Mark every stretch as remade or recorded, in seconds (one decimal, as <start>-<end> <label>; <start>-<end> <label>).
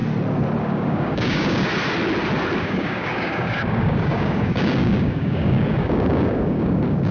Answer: 0.0-0.6 recorded; 0.6-1.7 remade; 1.7-2.6 recorded; 2.6-7.1 remade